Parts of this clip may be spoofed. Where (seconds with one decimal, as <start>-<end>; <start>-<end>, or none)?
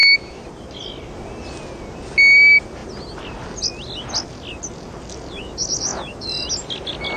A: none